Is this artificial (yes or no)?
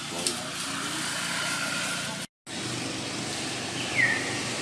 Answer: no